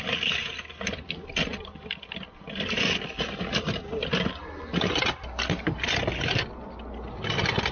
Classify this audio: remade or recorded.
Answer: recorded